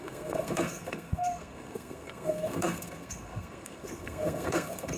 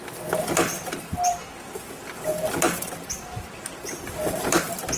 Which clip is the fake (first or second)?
first